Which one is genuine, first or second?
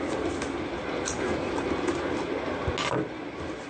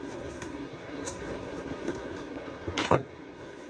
first